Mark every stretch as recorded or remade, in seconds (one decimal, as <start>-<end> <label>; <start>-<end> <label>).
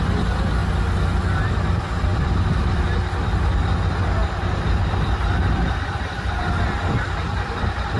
0.0-8.0 recorded